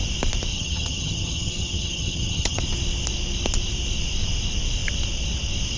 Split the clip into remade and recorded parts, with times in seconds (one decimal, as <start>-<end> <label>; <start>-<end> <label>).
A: 0.0-0.5 recorded; 0.5-2.6 remade; 2.6-5.8 recorded

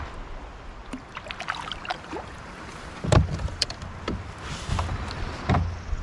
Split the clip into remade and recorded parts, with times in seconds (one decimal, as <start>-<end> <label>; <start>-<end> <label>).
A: 0.0-1.9 recorded; 1.9-3.8 remade; 3.8-6.0 recorded

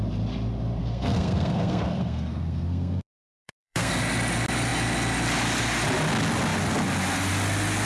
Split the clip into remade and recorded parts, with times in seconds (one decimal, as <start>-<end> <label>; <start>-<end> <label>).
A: 0.0-0.8 recorded; 0.8-3.9 remade; 3.9-7.9 recorded

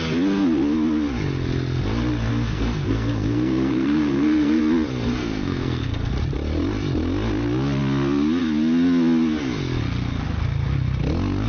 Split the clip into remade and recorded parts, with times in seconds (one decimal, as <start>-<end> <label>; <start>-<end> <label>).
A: 0.0-2.3 recorded; 2.3-4.6 remade; 4.6-5.2 recorded; 5.2-6.1 remade; 6.1-11.5 recorded

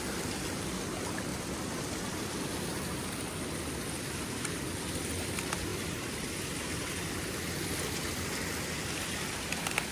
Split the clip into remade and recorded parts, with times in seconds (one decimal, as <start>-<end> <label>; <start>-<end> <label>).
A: 0.0-1.3 recorded; 1.3-2.3 remade; 2.3-5.7 recorded; 5.7-7.1 remade; 7.1-9.9 recorded